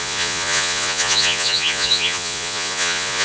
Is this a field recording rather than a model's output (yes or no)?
no